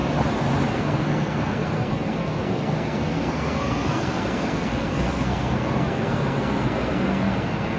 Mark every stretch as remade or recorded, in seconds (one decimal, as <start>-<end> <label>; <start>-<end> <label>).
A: 0.0-0.7 recorded; 0.7-7.8 remade